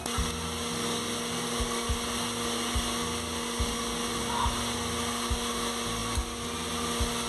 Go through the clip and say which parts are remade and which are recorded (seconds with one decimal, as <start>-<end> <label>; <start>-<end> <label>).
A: 0.0-7.3 recorded

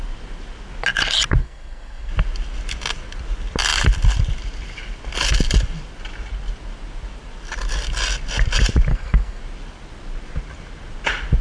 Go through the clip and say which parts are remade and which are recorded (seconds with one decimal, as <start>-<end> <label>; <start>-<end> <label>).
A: 0.0-1.4 recorded; 1.4-2.1 remade; 2.1-8.9 recorded; 8.9-9.4 remade; 9.4-11.4 recorded

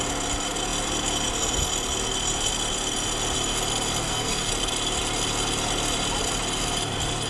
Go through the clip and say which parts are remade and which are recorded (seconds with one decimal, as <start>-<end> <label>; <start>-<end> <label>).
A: 0.0-4.0 recorded; 4.0-4.5 remade; 4.5-7.3 recorded

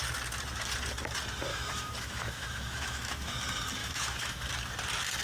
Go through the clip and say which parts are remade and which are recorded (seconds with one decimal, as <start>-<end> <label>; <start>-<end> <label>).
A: 0.0-1.5 recorded; 1.5-3.3 remade; 3.3-3.8 recorded; 3.8-4.5 remade; 4.5-5.2 recorded

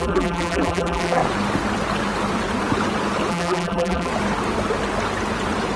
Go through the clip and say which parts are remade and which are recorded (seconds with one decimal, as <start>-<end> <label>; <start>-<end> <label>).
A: 0.0-1.2 remade; 1.2-3.3 recorded; 3.3-4.1 remade; 4.1-5.8 recorded

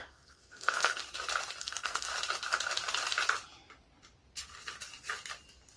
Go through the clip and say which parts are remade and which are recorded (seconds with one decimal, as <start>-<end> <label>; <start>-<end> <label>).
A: 0.0-1.0 remade; 1.0-1.6 recorded; 1.6-2.1 remade; 2.1-5.8 recorded

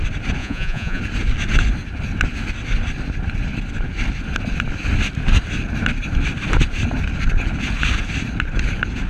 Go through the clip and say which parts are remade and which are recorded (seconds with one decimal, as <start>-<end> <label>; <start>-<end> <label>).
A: 0.0-0.4 recorded; 0.4-1.0 remade; 1.0-9.1 recorded